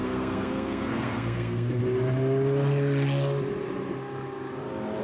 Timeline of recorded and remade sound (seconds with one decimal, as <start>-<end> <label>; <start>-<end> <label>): 0.0-1.8 remade; 1.8-5.0 recorded